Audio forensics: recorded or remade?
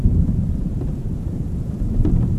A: remade